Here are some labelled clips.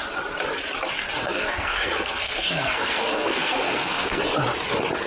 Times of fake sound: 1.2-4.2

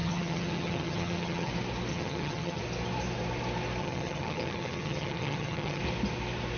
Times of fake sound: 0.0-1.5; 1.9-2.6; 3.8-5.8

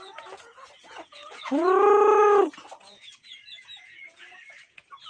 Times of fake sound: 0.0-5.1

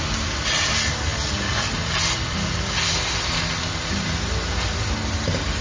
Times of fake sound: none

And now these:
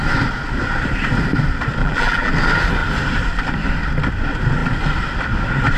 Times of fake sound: 1.8-2.3

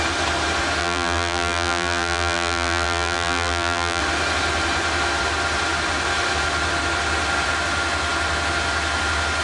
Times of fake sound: 0.8-4.0

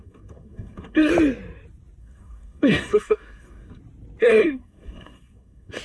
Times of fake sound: 0.0-1.1; 2.0-3.8; 4.2-5.8